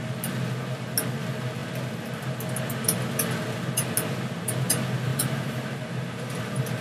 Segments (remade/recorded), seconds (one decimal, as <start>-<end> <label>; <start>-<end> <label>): 0.0-5.1 recorded; 5.1-6.8 remade